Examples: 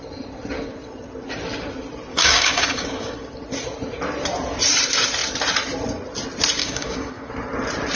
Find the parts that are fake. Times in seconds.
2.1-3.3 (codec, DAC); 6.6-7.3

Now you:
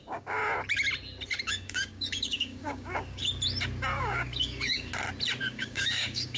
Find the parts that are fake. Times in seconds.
0.0-0.4 (codec, DAC); 1.4-3.2; 4.0-4.9; 5.4-6.4

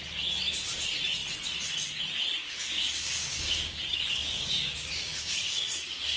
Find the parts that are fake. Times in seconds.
2.4-6.2 (codec, DAC)